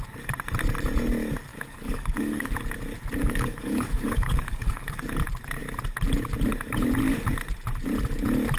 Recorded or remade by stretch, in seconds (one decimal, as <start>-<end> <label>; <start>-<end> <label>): 0.0-1.5 recorded; 1.5-2.5 remade; 2.5-3.2 recorded; 3.2-5.0 remade; 5.0-8.6 recorded